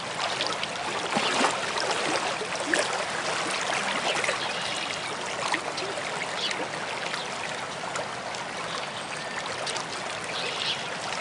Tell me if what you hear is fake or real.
real